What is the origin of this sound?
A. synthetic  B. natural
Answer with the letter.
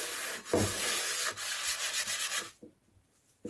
B